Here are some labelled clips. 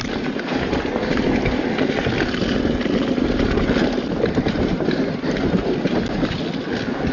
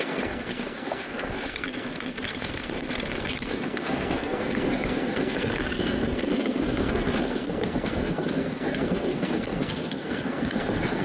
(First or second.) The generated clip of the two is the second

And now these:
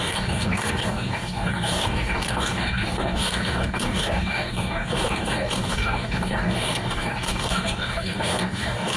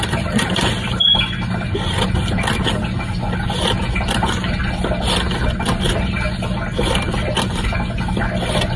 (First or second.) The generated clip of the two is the first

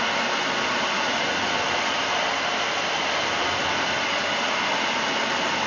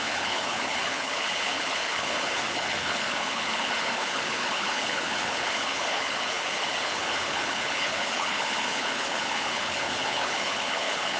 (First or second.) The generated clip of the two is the second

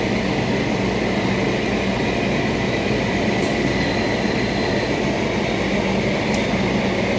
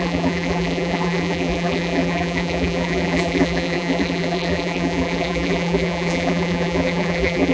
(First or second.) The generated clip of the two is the second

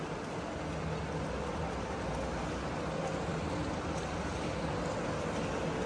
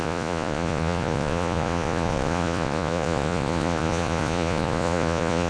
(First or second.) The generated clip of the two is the second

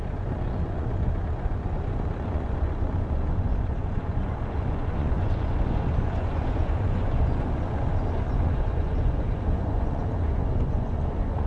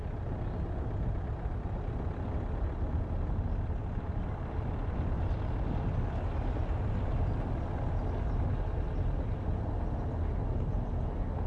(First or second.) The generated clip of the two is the first